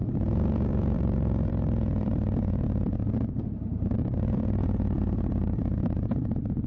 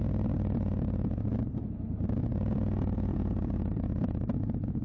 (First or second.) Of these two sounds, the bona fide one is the second